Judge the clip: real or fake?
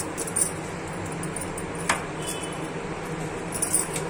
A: real